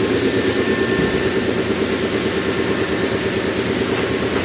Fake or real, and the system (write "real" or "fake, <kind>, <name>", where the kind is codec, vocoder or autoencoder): real